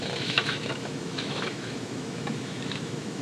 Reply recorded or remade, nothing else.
remade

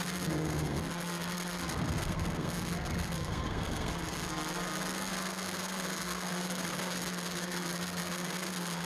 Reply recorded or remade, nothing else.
remade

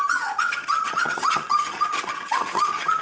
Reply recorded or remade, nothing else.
remade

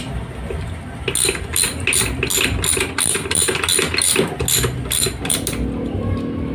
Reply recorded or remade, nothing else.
recorded